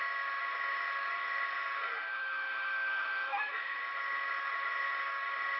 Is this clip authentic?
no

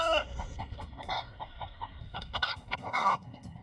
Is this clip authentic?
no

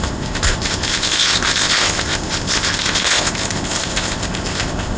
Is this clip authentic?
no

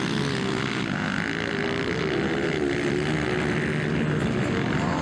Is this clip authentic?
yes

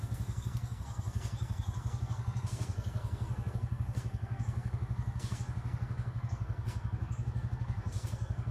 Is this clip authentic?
no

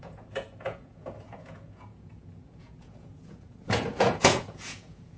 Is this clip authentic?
no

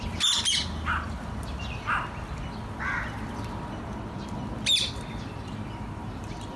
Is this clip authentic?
yes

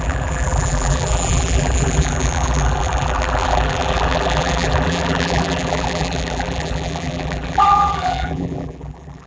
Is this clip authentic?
no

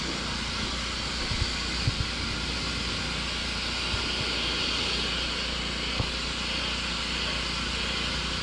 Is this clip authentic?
yes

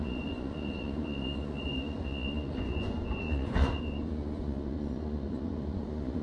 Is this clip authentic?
no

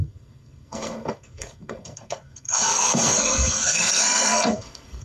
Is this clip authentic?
no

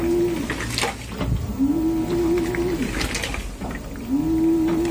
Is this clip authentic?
yes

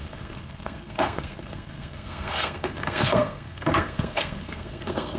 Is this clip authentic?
no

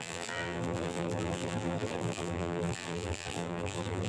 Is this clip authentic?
no